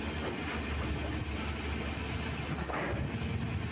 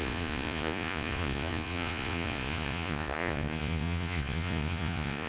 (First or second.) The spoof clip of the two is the second